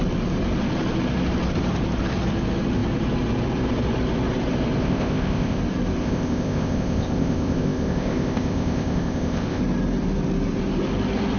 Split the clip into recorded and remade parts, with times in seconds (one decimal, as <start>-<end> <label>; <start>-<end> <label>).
0.0-4.8 recorded; 4.8-5.6 remade; 5.6-6.0 recorded; 6.0-9.6 remade; 9.6-11.4 recorded